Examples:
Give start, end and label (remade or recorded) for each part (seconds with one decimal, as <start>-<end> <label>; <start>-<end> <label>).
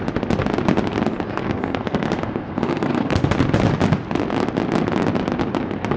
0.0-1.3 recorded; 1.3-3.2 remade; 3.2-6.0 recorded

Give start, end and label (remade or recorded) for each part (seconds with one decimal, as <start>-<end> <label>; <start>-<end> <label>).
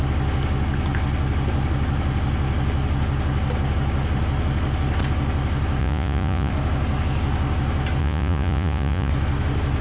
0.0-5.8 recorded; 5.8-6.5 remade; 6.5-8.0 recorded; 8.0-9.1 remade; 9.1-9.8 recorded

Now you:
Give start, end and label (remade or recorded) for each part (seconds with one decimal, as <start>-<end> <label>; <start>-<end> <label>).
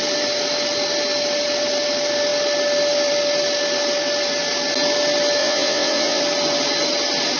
0.0-5.4 recorded; 5.4-6.2 remade; 6.2-7.4 recorded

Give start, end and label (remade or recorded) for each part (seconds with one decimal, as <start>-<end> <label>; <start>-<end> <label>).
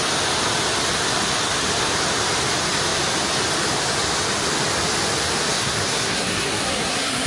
0.0-5.5 recorded; 5.5-7.3 remade